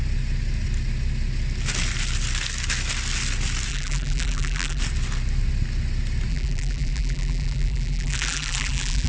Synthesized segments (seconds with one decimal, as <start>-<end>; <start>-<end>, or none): 3.7-4.8; 6.3-9.1

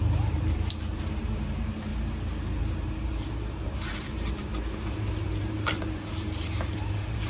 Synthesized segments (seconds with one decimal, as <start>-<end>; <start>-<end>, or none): 0.0-1.9; 2.6-4.5; 5.3-7.3

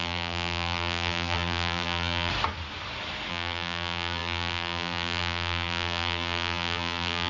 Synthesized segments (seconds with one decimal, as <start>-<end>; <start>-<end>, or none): 0.0-2.3; 3.3-7.3

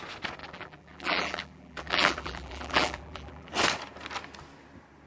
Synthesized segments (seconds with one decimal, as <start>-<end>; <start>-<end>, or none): 0.4-3.5

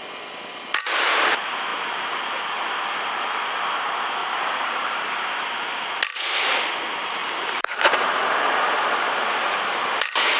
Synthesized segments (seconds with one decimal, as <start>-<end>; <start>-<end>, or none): 4.2-5.1; 7.2-8.3

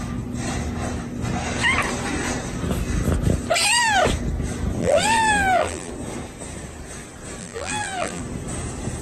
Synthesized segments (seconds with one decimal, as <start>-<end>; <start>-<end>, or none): 4.8-5.9; 7.4-8.2